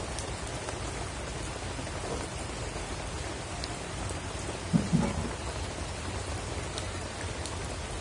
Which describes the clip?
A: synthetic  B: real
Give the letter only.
B